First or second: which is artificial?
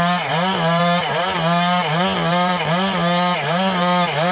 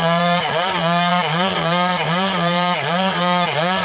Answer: second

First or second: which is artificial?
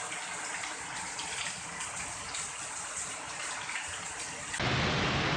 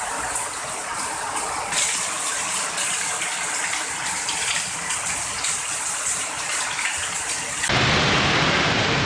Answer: second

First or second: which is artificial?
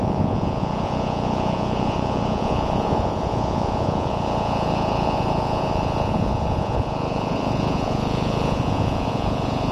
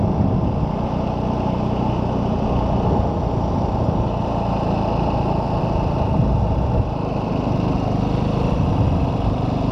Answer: first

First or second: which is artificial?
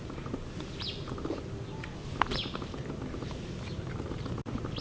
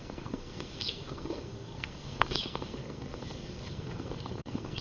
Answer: second